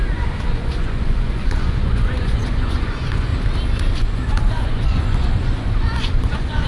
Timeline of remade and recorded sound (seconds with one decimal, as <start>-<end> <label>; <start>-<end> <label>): 0.0-3.3 remade; 3.3-3.9 recorded; 3.9-6.7 remade